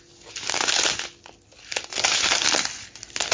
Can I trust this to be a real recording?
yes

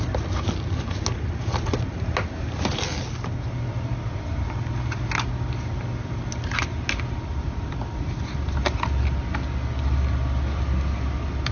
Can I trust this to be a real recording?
yes